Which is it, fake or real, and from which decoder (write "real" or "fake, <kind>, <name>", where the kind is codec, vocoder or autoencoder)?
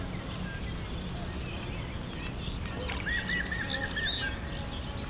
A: real